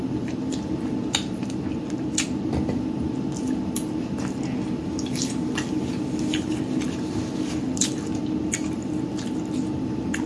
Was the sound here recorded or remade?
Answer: recorded